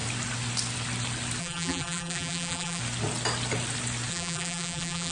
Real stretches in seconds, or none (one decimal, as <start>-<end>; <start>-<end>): 0.0-1.4; 2.8-4.1

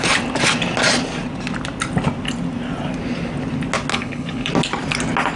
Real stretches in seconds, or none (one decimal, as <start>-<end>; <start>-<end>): 0.0-3.9; 4.5-5.4

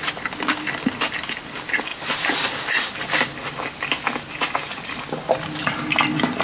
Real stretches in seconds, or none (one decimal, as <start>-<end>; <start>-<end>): 0.0-6.4

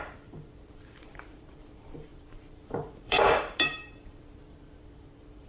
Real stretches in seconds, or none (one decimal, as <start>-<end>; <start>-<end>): none

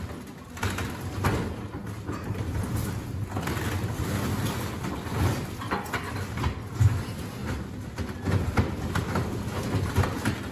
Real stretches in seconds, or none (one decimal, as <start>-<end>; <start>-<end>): 0.0-10.5

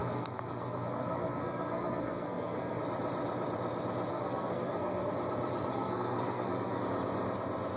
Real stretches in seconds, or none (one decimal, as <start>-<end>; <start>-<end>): 2.8-4.1; 5.1-5.7; 6.8-7.8

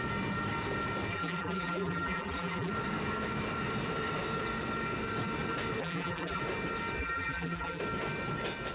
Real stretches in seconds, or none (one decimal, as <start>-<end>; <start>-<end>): 0.0-1.1; 2.7-5.8; 6.4-7.0; 7.8-8.7